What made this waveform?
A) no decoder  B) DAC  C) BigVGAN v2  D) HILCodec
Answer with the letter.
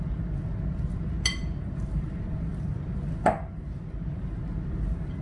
A